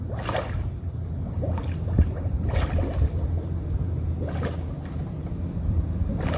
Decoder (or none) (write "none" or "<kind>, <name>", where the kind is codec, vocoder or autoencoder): none